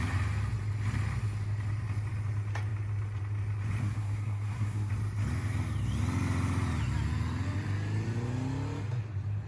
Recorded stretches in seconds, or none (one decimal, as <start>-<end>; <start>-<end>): 0.0-3.8; 4.9-9.5